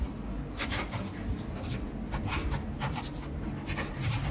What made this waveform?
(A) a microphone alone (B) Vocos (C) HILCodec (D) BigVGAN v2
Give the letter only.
A